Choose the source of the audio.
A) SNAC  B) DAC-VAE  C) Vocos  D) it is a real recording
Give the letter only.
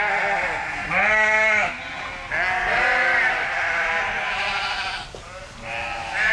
D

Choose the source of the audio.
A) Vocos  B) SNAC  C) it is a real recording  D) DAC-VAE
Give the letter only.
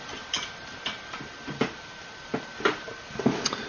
C